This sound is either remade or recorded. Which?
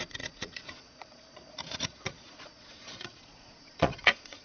remade